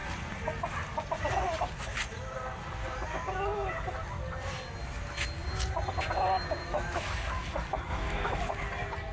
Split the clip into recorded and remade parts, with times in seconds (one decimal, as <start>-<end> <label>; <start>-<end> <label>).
0.0-6.6 recorded; 6.6-7.1 remade; 7.1-7.9 recorded; 7.9-8.5 remade; 8.5-9.1 recorded